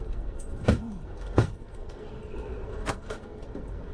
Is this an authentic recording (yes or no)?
no